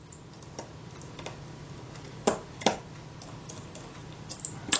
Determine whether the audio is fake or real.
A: real